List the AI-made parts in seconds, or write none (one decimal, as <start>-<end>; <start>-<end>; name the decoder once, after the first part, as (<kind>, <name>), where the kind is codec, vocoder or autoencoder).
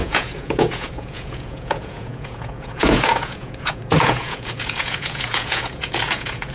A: 0.0-6.5 (vocoder, Vocos)